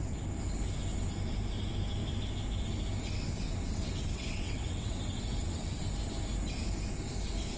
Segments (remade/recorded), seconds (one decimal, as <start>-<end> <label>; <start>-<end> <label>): 0.0-3.5 recorded; 3.5-5.8 remade; 5.8-7.6 recorded